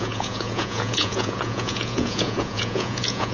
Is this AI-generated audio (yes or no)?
yes